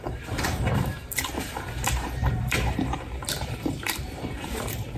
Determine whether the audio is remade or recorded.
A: remade